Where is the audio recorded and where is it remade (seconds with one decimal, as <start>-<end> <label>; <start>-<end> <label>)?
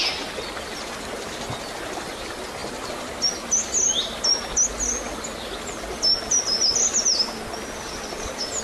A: 0.0-2.6 recorded; 2.6-3.1 remade; 3.1-8.6 recorded